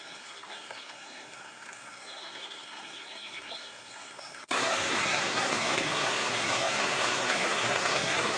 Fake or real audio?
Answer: fake